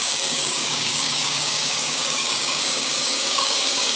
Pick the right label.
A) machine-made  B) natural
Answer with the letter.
A